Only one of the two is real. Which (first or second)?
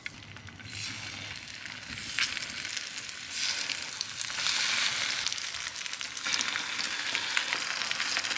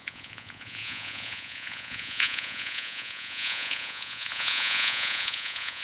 first